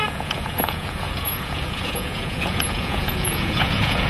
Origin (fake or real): fake